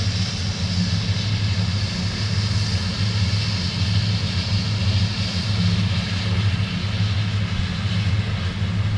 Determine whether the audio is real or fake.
real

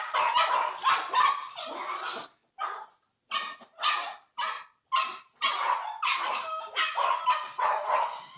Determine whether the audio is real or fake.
real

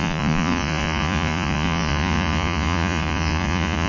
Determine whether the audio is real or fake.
fake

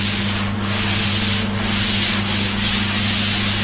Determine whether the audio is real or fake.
real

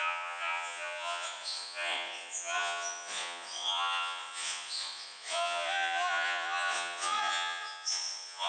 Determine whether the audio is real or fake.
fake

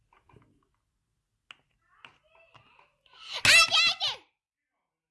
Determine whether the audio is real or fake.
real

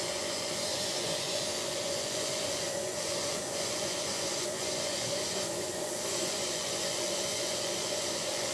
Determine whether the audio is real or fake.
fake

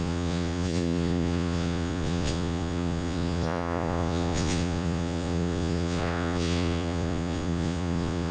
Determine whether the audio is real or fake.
fake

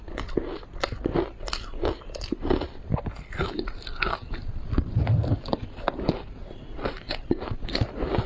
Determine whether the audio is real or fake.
real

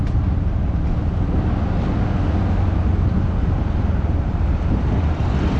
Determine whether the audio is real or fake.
real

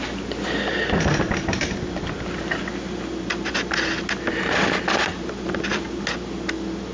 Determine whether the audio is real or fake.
real